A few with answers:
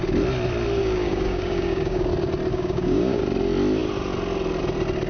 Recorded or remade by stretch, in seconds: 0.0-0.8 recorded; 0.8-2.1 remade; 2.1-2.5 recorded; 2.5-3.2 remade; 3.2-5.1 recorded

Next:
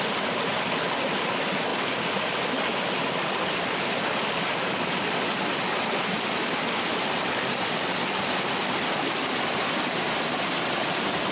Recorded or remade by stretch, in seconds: 0.0-11.3 recorded

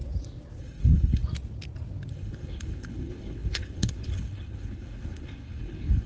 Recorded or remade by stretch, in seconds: 0.0-0.6 recorded; 0.6-1.2 remade; 1.2-2.1 recorded; 2.1-6.1 remade

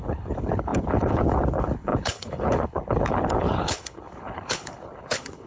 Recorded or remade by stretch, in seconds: 0.0-5.5 remade

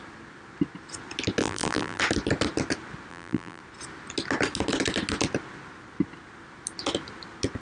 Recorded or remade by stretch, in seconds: 0.0-1.4 recorded; 1.4-2.0 remade; 2.0-3.1 recorded; 3.1-3.6 remade; 3.6-7.6 recorded